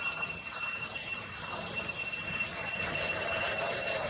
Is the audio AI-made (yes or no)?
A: yes